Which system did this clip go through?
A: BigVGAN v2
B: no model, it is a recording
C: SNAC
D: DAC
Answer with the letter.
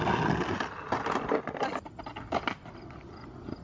B